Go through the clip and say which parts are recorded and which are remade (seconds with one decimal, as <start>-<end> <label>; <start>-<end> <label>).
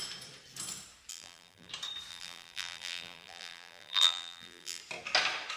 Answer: 0.0-1.1 recorded; 1.1-1.7 remade; 1.7-2.1 recorded; 2.1-4.8 remade; 4.8-5.6 recorded